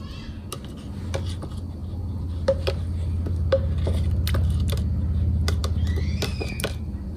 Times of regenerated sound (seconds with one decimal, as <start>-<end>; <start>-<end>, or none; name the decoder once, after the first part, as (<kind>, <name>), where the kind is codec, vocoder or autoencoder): none